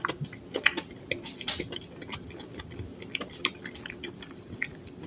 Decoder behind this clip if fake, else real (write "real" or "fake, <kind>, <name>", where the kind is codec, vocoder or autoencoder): real